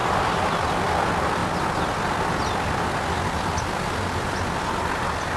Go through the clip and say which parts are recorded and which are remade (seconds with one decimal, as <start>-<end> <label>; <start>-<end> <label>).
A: 0.0-0.5 remade; 0.5-5.4 recorded